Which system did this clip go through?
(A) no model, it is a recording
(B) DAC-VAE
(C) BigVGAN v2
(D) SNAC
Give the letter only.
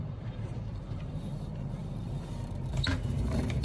C